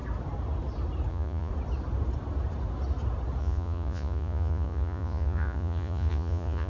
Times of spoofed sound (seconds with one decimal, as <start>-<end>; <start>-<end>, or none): 1.1-1.5; 3.4-6.7